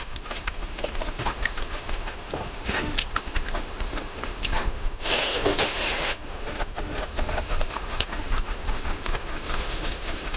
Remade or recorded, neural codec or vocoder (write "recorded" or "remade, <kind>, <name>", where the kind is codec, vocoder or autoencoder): remade, autoencoder, DAC-VAE